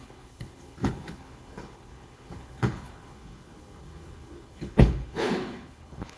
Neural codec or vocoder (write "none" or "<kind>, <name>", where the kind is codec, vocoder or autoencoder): codec, HILCodec